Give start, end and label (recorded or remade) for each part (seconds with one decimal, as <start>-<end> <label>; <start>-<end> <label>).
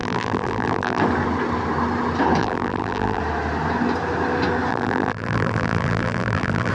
0.0-1.0 remade; 1.0-2.4 recorded; 2.4-3.2 remade; 3.2-4.7 recorded; 4.7-6.7 remade